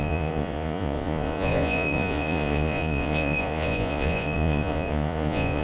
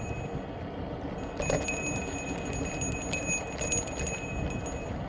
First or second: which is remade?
first